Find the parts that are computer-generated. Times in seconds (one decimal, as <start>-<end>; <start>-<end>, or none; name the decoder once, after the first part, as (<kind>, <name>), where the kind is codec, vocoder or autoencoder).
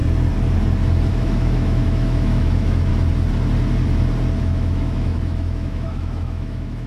1.1-2.9 (autoencoder, DAC-VAE); 4.4-6.9